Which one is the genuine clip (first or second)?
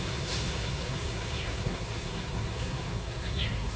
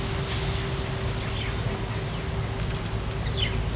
second